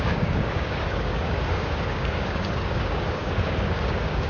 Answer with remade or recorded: remade